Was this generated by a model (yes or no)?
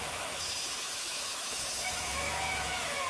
yes